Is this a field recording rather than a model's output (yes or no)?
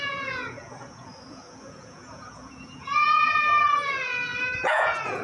no